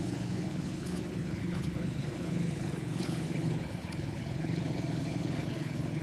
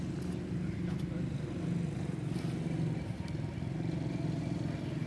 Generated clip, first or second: first